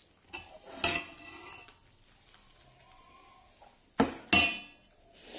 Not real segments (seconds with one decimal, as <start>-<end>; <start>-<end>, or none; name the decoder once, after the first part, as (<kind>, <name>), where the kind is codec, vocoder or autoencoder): none